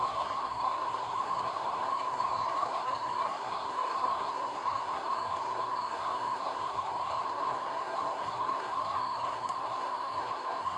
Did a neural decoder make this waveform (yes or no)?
yes